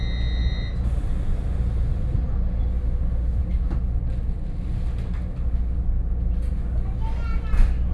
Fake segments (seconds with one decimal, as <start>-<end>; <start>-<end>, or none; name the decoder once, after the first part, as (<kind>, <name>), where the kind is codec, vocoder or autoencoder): none